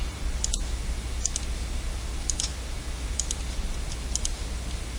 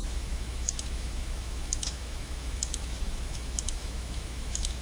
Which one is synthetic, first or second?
second